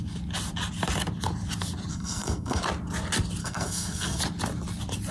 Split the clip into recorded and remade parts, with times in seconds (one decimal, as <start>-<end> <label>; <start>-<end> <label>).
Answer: 0.0-1.9 recorded; 1.9-2.6 remade; 2.6-3.4 recorded; 3.4-4.2 remade; 4.2-5.1 recorded